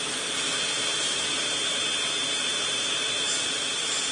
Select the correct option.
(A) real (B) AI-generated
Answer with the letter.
A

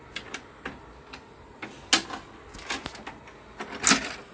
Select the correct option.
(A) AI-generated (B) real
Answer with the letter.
B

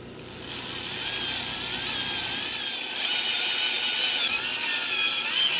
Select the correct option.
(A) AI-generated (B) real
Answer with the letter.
B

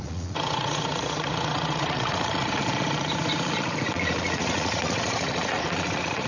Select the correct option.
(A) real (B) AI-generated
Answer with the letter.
B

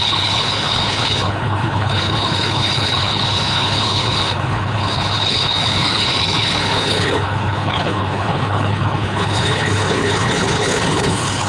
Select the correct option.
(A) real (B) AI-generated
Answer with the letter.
B